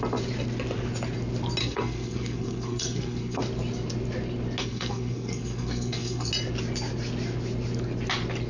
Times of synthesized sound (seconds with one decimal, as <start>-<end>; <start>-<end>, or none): 1.6-3.4; 4.6-6.3